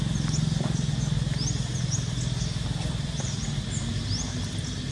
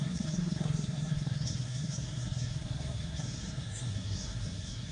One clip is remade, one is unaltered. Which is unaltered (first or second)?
first